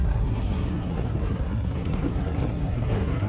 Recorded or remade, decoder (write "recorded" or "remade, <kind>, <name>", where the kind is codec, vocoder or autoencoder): remade, codec, SNAC